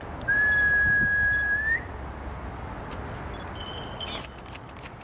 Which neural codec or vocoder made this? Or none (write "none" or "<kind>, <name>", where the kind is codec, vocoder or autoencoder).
none